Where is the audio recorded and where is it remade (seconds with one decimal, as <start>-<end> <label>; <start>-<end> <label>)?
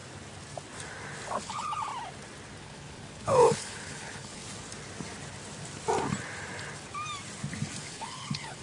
0.0-1.4 recorded; 1.4-1.9 remade; 1.9-2.6 recorded; 2.6-4.4 remade; 4.4-7.8 recorded; 7.8-8.6 remade